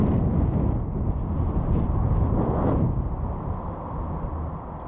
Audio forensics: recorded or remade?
recorded